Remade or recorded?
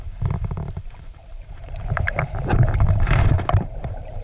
remade